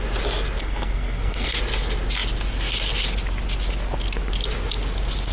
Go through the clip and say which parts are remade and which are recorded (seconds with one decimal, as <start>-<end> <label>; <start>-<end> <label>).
0.0-0.6 recorded; 0.6-1.5 remade; 1.5-5.3 recorded

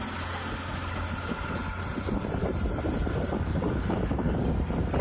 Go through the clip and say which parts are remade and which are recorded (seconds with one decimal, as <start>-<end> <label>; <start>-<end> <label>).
0.0-1.9 recorded; 1.9-5.0 remade

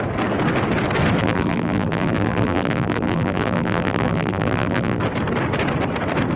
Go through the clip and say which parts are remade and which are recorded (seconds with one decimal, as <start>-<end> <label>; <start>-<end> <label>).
0.0-1.2 recorded; 1.2-5.0 remade; 5.0-6.4 recorded

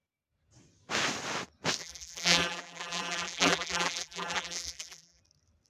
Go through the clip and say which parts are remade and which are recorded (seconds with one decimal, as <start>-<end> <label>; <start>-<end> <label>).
0.0-1.8 recorded; 1.8-5.2 remade; 5.2-5.7 recorded